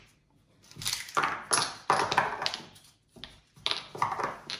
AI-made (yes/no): no